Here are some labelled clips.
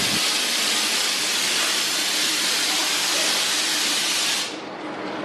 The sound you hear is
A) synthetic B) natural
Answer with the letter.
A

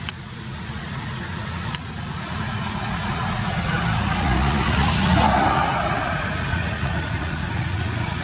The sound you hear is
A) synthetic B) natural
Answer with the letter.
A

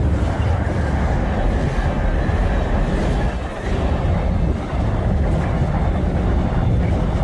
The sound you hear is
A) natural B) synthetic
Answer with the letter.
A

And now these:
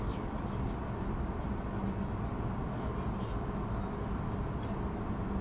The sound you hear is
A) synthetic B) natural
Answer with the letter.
B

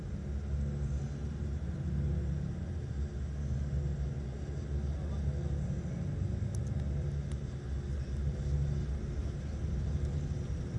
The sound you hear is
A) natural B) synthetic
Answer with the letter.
A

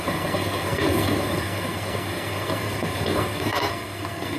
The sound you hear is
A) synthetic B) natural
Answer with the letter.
A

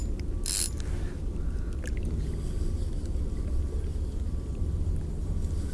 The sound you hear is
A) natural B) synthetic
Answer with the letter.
A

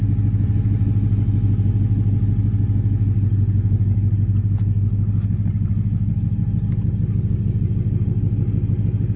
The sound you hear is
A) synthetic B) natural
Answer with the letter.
B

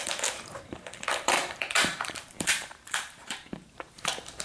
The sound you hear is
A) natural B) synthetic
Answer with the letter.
B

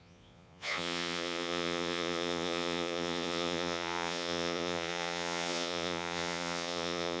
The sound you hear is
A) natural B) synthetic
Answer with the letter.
B